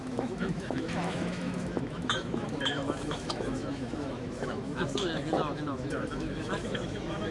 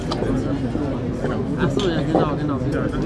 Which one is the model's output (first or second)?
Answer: first